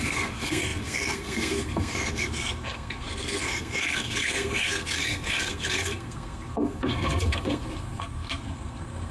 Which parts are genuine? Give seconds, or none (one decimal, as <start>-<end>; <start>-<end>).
none